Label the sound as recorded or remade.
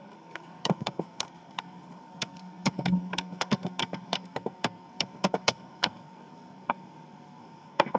remade